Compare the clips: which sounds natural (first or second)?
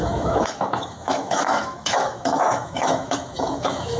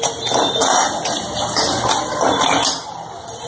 second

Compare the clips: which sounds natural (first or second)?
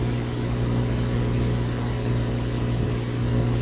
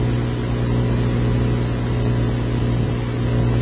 second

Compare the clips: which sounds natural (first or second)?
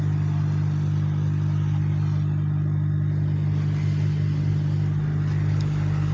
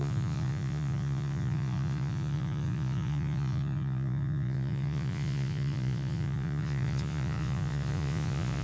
first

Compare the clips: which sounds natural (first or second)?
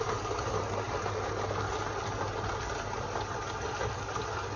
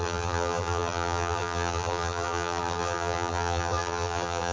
first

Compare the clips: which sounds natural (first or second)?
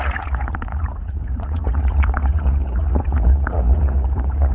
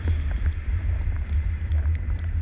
second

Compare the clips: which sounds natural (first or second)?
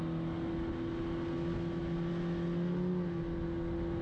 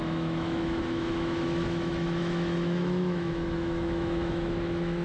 first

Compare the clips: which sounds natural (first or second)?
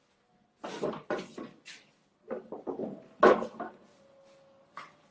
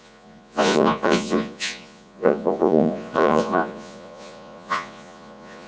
first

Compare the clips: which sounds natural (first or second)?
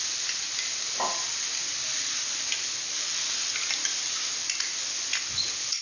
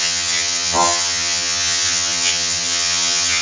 first